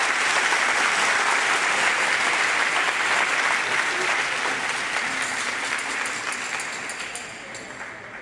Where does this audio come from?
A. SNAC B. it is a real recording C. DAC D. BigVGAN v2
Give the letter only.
B